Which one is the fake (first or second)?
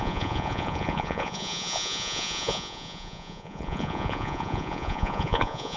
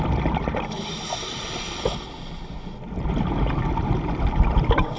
first